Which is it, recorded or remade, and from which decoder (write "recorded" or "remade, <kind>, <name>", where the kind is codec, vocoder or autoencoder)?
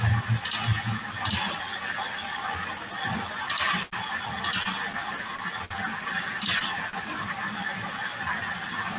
recorded